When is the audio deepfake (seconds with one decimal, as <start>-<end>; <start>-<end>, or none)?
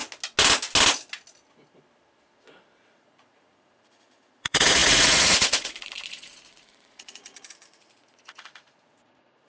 2.8-9.5